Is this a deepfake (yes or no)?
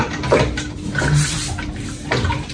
yes